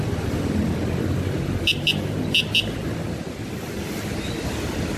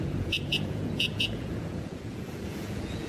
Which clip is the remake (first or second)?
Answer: second